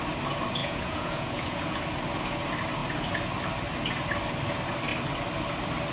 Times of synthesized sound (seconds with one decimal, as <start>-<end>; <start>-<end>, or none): 0.6-1.8